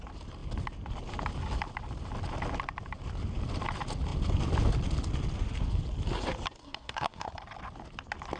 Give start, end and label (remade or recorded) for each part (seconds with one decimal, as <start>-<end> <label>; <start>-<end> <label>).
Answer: 0.0-6.6 recorded; 6.6-7.3 remade; 7.3-8.4 recorded